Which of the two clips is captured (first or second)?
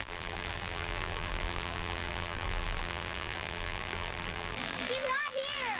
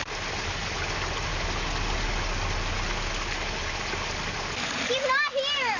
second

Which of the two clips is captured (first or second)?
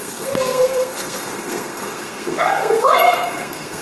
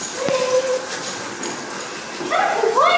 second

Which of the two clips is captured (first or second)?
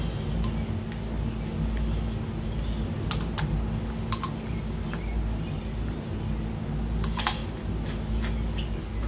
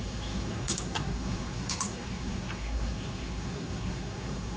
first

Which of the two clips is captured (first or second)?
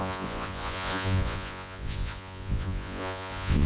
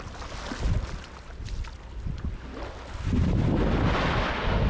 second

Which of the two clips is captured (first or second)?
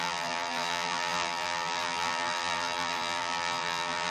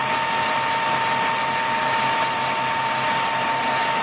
second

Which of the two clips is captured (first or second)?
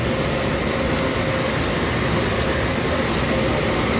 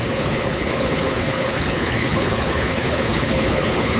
first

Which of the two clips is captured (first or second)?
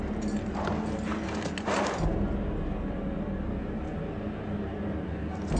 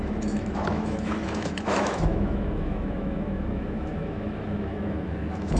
first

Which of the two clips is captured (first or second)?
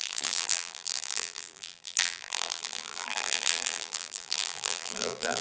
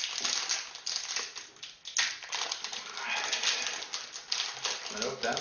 second